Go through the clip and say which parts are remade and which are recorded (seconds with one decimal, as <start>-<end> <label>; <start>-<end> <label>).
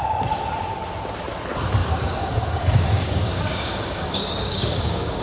0.0-1.8 recorded; 1.8-5.2 remade